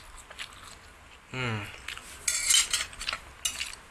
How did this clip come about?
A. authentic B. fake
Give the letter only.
A